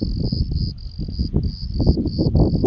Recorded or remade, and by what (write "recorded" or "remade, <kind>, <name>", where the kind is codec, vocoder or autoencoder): recorded